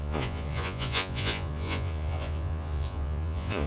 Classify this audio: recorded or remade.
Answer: remade